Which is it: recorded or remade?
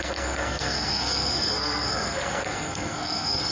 remade